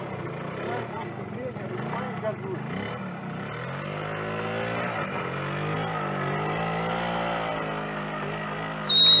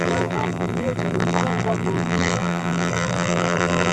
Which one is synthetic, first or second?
second